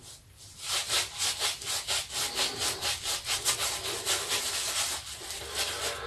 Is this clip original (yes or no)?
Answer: yes